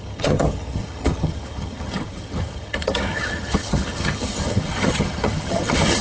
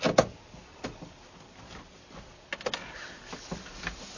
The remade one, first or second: first